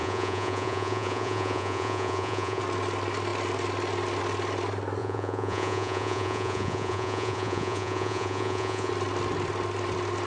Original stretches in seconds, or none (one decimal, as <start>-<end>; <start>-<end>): 2.6-5.0; 8.9-10.3